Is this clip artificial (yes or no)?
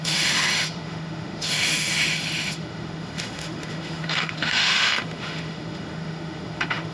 yes